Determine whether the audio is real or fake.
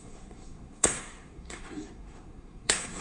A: fake